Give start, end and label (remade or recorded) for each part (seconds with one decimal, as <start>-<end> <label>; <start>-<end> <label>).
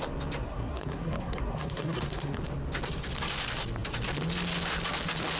0.0-0.4 recorded; 0.4-2.4 remade; 2.4-5.4 recorded